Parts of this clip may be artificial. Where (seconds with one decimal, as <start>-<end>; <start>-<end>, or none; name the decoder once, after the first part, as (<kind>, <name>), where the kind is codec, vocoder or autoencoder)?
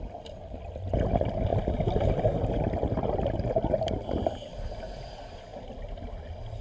none